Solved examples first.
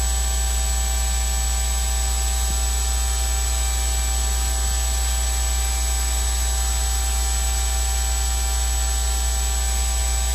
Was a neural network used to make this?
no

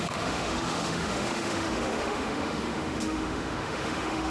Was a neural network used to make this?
yes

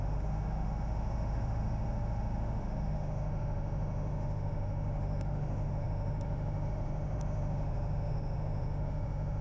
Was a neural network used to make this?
yes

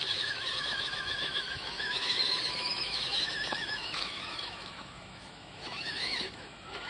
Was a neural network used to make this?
yes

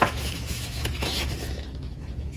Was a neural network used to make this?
yes